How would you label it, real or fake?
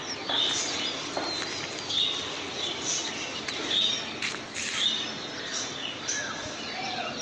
real